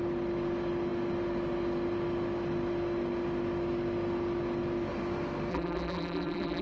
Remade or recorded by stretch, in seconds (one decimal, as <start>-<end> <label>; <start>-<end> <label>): 0.0-5.5 recorded; 5.5-6.6 remade